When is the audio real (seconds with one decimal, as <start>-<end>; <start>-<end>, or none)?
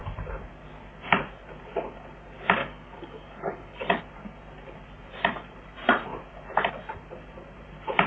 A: 0.0-2.6; 4.0-8.1